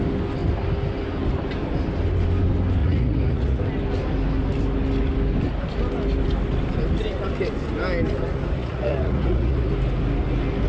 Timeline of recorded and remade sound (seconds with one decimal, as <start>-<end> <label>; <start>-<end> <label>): 0.0-2.8 recorded; 2.8-3.6 remade; 3.6-8.6 recorded; 8.6-9.7 remade; 9.7-10.7 recorded